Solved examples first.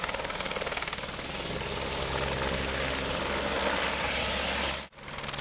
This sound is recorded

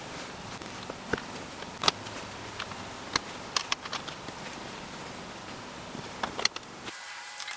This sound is recorded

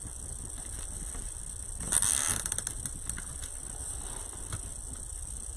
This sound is recorded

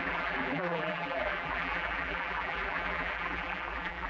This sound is remade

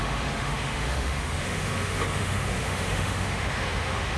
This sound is remade